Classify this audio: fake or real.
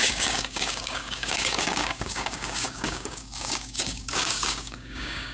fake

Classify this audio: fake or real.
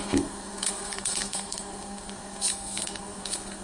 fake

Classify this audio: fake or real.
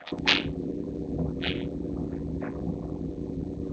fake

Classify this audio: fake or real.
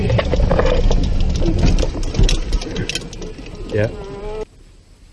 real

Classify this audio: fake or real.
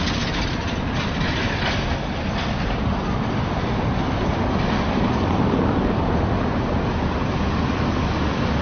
real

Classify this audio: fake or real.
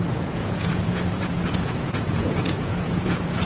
fake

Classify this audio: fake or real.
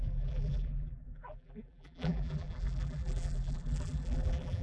fake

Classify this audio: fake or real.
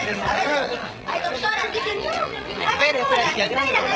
fake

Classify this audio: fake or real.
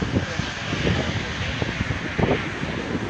real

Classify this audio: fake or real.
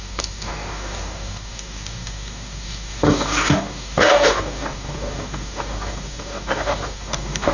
fake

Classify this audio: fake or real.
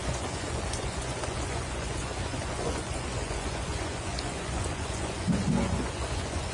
fake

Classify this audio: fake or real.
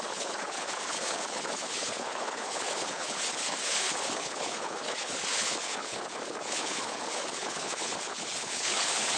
fake